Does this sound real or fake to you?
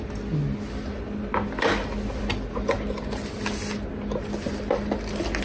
real